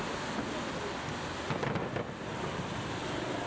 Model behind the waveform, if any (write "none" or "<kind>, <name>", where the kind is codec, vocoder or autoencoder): none